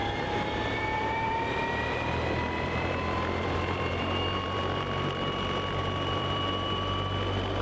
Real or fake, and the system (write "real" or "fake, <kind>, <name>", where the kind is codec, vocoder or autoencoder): fake, vocoder, BigVGAN v2